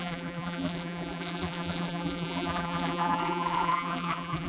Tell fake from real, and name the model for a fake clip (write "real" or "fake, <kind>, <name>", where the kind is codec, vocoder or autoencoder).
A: fake, vocoder, BigVGAN v2